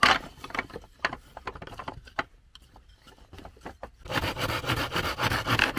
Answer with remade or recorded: remade